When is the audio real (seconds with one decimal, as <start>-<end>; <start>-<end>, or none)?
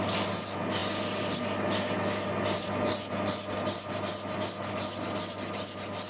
0.0-6.1